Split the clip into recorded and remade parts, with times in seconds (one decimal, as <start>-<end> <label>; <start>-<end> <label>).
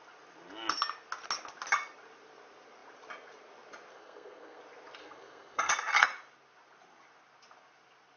0.0-3.9 recorded; 3.9-4.6 remade; 4.6-5.0 recorded; 5.0-5.7 remade; 5.7-8.2 recorded